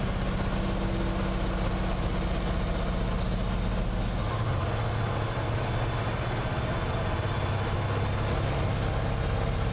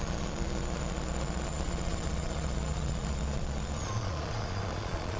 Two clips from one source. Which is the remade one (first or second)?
second